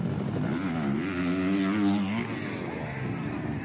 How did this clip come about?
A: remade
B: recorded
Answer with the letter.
B